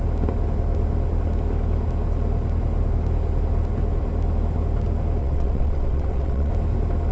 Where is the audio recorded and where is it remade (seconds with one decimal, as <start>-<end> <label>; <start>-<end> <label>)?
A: 0.0-5.2 recorded; 5.2-6.5 remade; 6.5-7.1 recorded